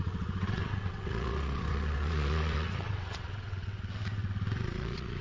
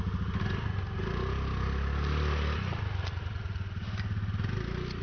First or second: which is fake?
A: first